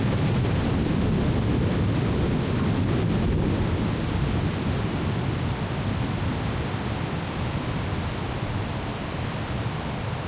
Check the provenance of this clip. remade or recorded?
recorded